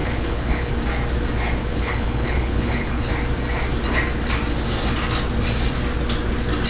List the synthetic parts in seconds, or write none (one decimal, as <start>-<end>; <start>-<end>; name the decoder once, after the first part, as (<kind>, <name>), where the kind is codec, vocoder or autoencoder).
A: 0.0-0.7 (codec, HILCodec); 1.6-3.1